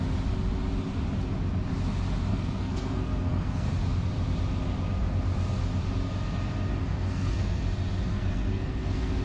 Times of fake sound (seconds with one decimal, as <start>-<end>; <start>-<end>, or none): 2.3-3.7; 6.8-7.6; 8.1-9.2